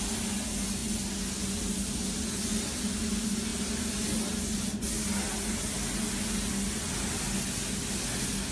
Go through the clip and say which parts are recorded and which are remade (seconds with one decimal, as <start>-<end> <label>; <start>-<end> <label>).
0.0-8.5 recorded